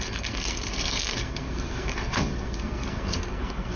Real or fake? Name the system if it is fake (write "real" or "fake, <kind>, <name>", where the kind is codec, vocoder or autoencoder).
fake, codec, SNAC